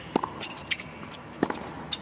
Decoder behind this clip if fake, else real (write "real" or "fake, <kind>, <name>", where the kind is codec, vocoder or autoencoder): real